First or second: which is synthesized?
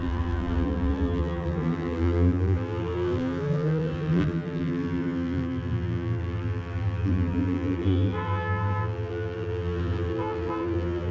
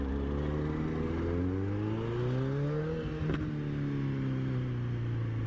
first